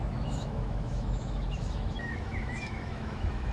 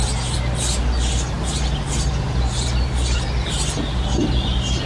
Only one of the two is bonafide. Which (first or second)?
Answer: second